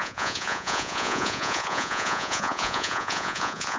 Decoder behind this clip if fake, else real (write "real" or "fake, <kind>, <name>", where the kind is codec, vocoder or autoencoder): fake, vocoder, Vocos